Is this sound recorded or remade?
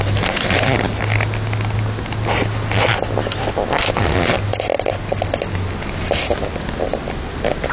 recorded